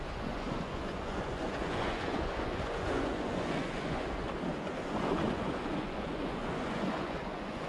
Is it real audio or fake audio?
fake